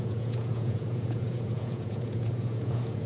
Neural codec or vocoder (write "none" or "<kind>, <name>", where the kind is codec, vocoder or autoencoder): vocoder, Vocos